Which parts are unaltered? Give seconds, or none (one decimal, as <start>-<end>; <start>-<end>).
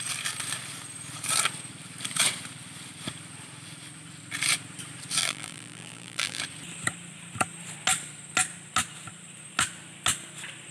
0.0-5.2; 6.4-10.7